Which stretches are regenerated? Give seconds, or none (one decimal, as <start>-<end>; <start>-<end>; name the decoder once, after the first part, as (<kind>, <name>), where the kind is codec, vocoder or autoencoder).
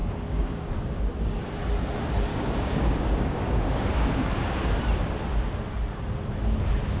0.0-0.7 (codec, DAC); 2.3-4.8